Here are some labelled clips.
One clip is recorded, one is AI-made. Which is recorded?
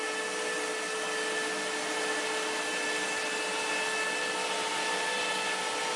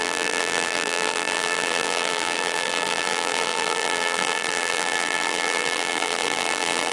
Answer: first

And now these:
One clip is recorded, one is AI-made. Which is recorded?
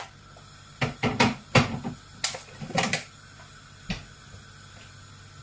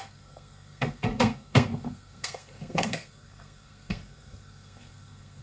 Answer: first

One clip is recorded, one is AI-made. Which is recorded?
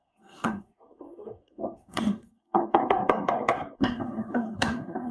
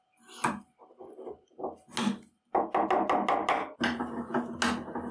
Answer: second